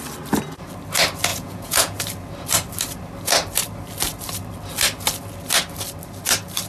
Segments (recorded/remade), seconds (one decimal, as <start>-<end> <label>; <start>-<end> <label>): 0.0-1.3 recorded; 1.3-2.0 remade; 2.0-6.7 recorded